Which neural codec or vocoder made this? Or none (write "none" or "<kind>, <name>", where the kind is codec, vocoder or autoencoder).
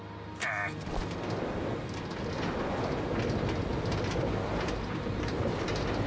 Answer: none